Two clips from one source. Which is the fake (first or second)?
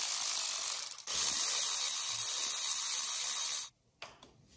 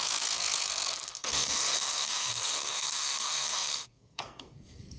second